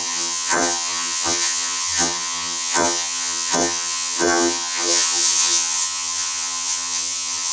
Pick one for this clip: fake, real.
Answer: fake